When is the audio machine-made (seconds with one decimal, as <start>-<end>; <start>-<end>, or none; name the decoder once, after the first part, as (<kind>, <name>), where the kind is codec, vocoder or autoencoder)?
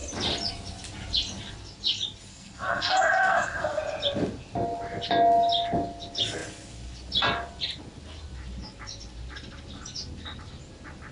2.3-3.8 (codec, SNAC)